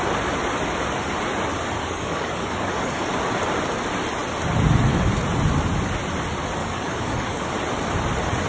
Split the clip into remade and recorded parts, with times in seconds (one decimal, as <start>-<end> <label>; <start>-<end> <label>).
0.0-1.8 recorded; 1.8-3.1 remade; 3.1-6.6 recorded; 6.6-7.5 remade; 7.5-8.5 recorded